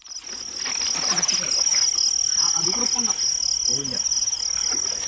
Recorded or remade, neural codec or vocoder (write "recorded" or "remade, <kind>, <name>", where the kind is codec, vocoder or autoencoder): recorded